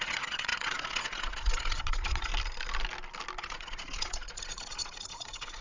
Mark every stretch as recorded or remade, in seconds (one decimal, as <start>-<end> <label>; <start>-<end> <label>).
0.0-2.3 remade; 2.3-3.4 recorded; 3.4-5.6 remade